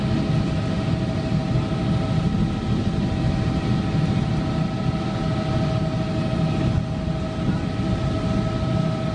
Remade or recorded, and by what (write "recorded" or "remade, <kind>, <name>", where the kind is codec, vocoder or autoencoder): recorded